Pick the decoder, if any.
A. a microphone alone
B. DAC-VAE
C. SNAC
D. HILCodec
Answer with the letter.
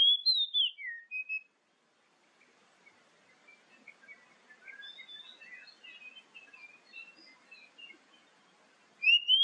A